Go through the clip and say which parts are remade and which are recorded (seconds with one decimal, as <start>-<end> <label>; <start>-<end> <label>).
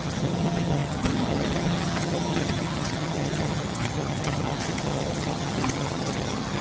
0.0-6.6 remade